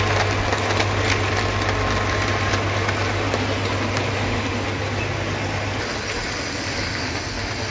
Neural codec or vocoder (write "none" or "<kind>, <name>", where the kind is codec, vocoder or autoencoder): none